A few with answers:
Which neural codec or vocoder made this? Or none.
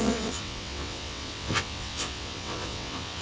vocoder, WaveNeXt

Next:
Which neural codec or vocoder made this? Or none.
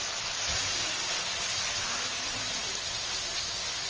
none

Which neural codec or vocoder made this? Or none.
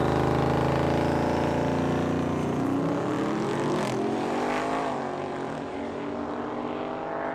none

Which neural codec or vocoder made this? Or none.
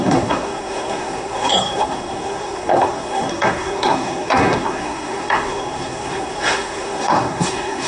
codec, SNAC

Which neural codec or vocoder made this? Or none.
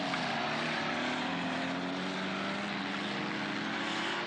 none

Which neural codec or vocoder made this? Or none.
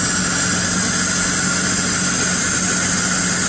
none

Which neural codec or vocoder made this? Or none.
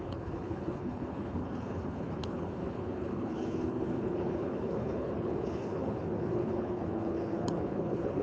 codec, HILCodec